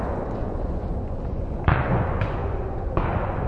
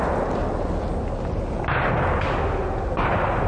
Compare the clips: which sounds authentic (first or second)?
second